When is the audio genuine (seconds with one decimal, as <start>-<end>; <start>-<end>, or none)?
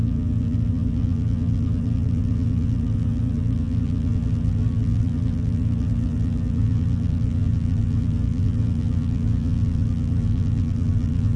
none